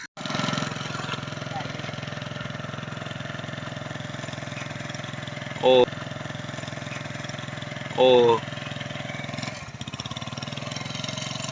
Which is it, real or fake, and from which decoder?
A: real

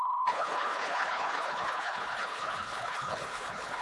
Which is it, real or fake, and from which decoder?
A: fake, codec, HILCodec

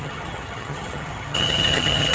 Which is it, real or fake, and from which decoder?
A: fake, vocoder, HiFi-GAN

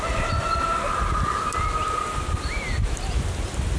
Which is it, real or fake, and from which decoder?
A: real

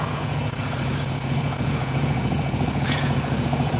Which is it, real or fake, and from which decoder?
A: fake, vocoder, Vocos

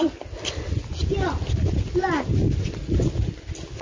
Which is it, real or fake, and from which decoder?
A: real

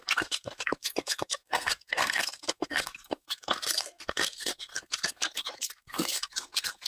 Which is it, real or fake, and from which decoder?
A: fake, codec, SNAC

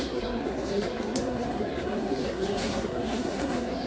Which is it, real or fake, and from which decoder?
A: fake, codec, SNAC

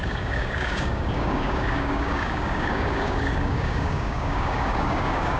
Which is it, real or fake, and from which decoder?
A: fake, codec, DAC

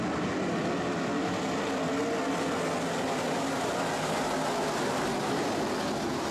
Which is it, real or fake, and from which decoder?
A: real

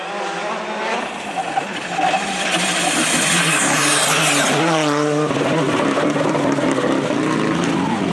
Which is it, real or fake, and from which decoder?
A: real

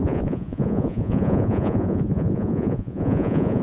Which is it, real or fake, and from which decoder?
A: fake, vocoder, Vocos